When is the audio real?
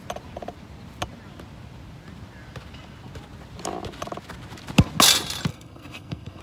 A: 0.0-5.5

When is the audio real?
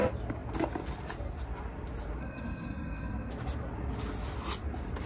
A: 0.0-2.2; 3.3-5.1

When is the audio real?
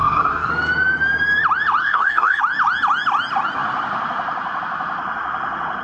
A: 0.5-1.8; 2.4-5.8